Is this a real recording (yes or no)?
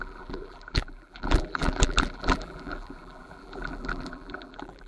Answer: no